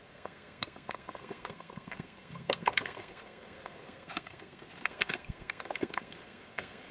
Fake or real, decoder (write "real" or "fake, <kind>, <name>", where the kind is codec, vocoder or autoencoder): fake, codec, SNAC